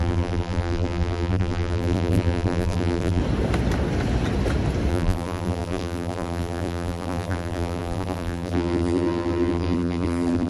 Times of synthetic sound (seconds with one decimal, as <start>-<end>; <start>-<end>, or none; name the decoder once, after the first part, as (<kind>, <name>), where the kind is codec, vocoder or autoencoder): 0.0-3.2 (vocoder, BigVGAN v2); 4.9-10.5